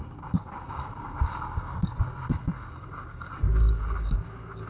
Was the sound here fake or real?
fake